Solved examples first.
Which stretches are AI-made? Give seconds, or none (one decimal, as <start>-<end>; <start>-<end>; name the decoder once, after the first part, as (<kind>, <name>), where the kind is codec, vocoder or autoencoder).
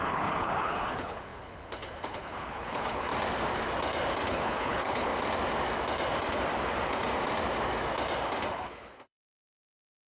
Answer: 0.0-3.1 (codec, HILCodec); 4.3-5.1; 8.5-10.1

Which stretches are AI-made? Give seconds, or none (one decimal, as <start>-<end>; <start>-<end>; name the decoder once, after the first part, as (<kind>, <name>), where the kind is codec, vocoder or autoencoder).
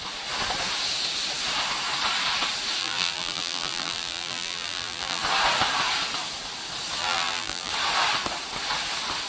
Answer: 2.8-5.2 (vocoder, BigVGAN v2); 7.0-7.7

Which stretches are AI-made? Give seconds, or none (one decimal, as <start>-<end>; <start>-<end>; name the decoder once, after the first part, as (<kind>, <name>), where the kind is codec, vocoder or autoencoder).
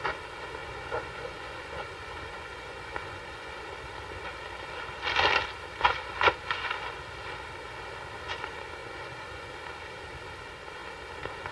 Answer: 0.6-3.6 (vocoder, Vocos); 8.8-9.5